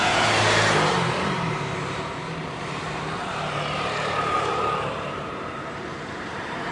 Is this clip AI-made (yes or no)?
yes